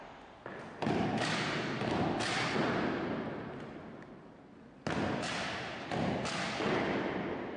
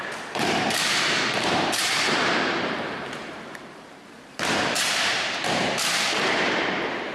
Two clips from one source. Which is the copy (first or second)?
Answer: second